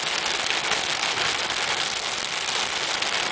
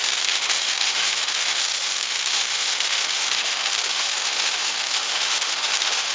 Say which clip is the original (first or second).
first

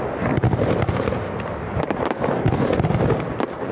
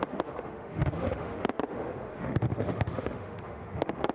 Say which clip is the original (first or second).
first